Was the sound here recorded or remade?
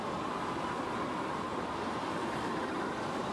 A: recorded